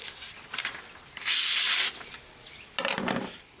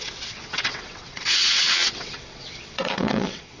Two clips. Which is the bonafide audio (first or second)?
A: first